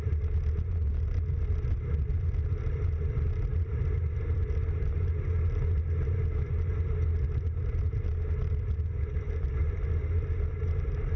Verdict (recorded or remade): recorded